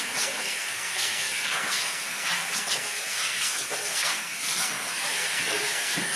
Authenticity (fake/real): fake